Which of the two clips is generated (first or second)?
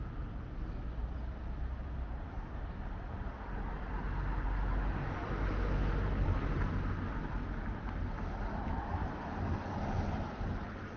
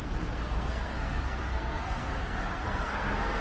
second